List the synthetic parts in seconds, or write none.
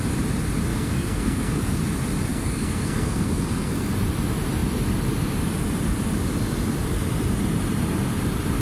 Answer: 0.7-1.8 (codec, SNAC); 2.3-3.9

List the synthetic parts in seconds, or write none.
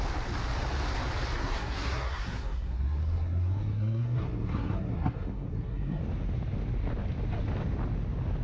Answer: 1.4-6.0 (codec, SNAC)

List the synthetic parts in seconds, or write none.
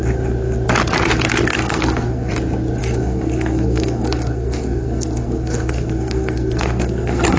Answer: 1.5-2.3 (codec, SNAC); 2.8-7.4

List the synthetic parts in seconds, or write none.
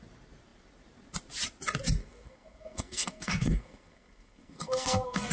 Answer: 2.0-5.3 (codec, SNAC)